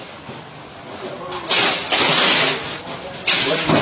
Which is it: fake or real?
real